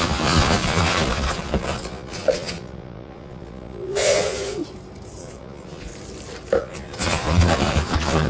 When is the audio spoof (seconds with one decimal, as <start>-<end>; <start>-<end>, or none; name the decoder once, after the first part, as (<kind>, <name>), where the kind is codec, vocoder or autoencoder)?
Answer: 0.0-4.6 (vocoder, Vocos); 5.2-5.9; 6.6-8.3